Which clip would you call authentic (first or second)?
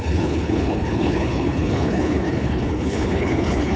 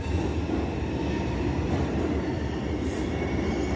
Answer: second